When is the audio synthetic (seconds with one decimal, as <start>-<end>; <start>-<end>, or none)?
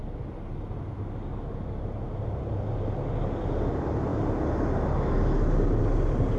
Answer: none